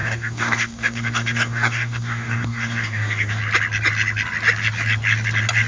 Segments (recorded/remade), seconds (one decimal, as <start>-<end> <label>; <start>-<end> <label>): 0.0-3.4 remade; 3.4-5.7 recorded